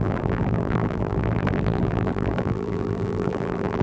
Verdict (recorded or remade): remade